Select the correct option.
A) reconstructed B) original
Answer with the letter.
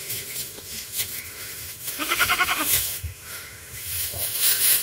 A